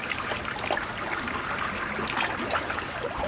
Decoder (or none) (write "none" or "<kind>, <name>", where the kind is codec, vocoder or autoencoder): none